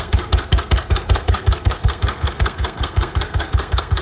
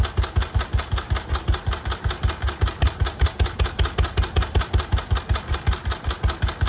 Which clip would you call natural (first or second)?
second